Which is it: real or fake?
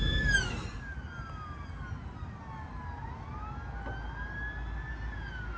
real